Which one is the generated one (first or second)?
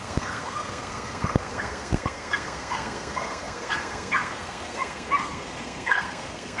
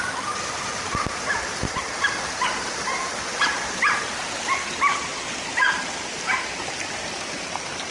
first